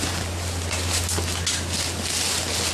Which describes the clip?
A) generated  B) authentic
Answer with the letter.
B